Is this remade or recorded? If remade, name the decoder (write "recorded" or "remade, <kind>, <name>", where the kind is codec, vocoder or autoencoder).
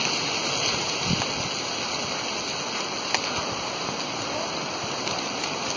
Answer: recorded